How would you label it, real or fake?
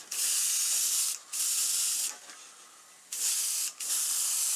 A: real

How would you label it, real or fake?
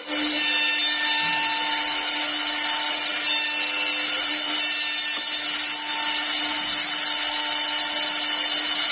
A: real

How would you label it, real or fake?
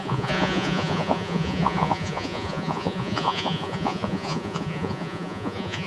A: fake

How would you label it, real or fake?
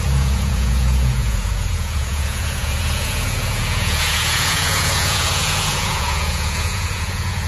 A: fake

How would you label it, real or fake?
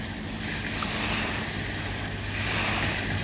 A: real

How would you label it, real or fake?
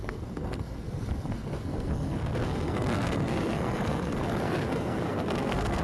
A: fake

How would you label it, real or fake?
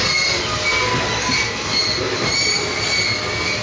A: real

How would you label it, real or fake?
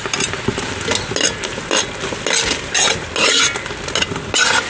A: real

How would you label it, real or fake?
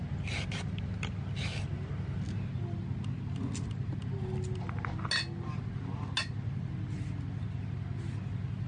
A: real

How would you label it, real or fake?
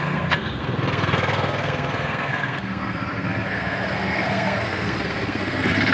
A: fake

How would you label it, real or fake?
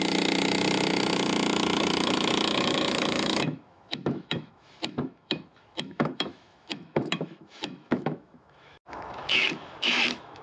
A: fake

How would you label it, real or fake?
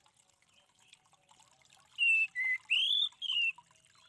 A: real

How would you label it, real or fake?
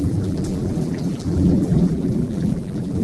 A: fake